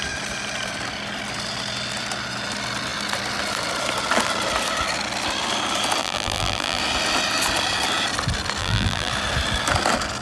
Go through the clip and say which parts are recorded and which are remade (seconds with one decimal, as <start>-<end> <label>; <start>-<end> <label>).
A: 0.0-6.0 recorded; 6.0-6.8 remade; 6.8-8.6 recorded; 8.6-9.1 remade; 9.1-10.2 recorded